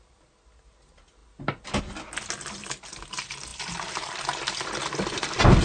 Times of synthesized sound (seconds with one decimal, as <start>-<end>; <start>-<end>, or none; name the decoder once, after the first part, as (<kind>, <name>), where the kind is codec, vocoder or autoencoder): none